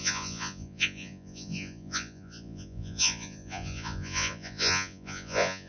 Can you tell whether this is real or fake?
fake